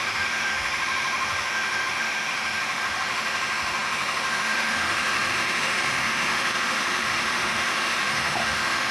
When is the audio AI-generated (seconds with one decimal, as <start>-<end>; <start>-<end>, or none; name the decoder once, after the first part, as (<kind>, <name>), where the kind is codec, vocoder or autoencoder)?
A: 0.0-8.9 (autoencoder, DAC-VAE)